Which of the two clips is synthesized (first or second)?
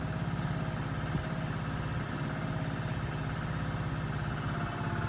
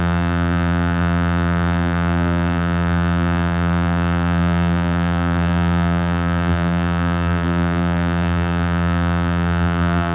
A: second